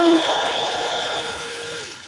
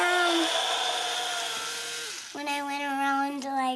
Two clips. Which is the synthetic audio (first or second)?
first